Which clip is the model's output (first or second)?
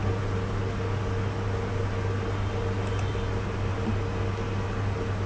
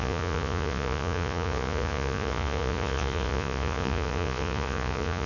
second